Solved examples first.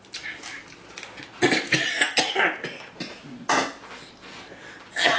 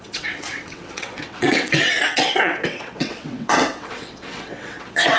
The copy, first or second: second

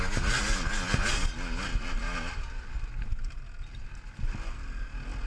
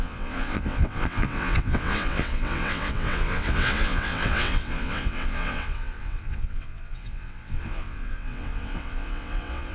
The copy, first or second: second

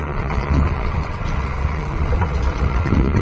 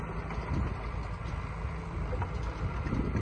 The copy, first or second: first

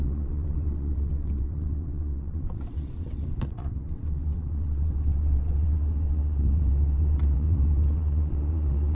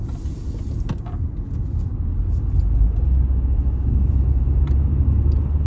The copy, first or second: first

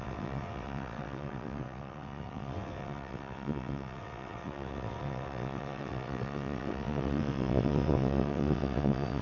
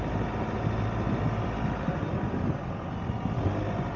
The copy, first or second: first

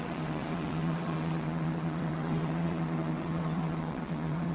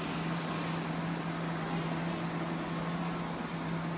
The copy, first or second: first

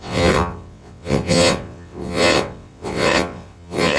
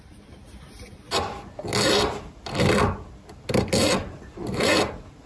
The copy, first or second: first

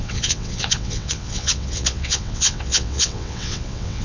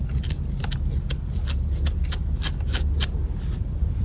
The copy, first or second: first